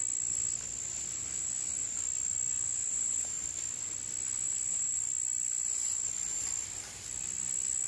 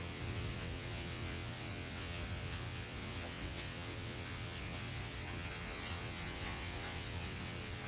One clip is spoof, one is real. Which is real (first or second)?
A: first